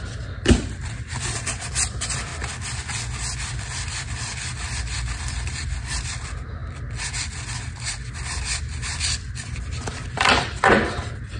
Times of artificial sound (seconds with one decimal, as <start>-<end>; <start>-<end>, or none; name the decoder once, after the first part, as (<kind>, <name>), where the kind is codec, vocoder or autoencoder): 0.0-2.3 (vocoder, BigVGAN v2); 3.6-6.6; 9.0-11.4